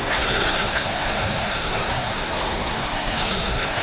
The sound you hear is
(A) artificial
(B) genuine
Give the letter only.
A